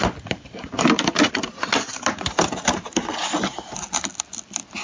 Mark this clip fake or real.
real